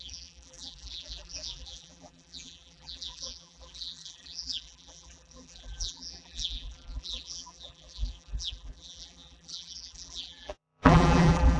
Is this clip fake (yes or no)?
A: yes